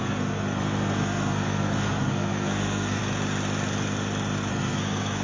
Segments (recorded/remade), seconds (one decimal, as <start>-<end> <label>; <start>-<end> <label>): 0.0-3.0 remade; 3.0-4.5 recorded; 4.5-5.2 remade